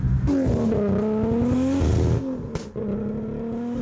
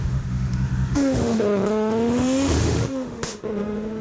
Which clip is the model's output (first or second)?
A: second